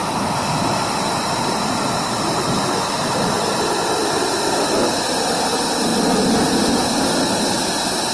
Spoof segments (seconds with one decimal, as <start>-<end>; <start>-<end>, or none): 0.0-3.3